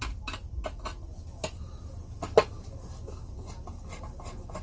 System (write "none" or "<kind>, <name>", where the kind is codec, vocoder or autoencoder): none